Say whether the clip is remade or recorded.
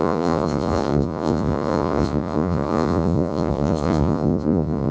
remade